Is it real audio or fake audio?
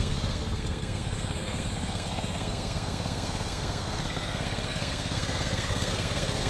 fake